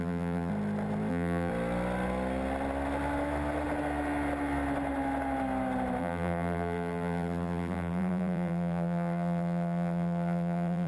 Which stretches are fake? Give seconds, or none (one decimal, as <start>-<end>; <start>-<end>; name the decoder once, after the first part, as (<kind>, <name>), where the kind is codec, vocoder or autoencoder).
0.0-0.5 (vocoder, BigVGAN v2); 1.1-1.5; 6.0-10.9